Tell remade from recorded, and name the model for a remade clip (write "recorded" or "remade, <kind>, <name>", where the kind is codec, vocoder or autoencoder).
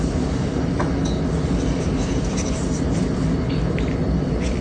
recorded